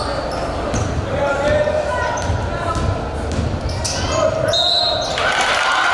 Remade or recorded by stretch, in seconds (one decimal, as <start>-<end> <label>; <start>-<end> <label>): 0.0-5.9 recorded

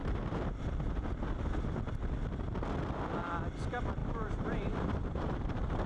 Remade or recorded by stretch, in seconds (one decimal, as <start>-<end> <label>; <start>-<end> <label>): 0.0-0.6 remade; 0.6-4.0 recorded; 4.0-5.9 remade